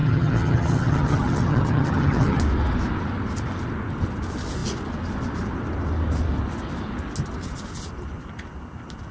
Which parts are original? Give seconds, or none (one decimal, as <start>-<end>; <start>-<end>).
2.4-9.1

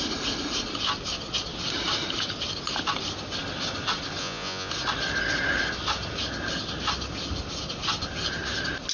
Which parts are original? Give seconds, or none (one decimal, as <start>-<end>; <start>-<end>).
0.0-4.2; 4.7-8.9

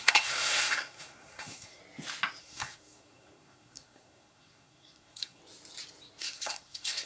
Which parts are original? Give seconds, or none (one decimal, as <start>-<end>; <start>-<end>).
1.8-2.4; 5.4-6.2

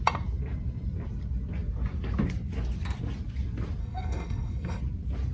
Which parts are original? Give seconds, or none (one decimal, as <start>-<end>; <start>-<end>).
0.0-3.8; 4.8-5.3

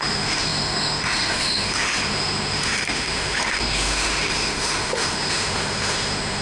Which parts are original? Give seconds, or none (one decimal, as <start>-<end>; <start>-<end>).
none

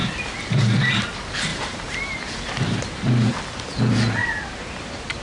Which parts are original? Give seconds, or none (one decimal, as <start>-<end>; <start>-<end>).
0.9-1.5; 3.3-4.2; 4.8-5.2

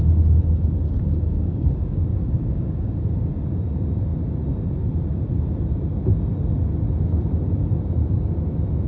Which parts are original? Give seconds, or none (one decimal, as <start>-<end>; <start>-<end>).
0.0-1.3; 3.2-8.9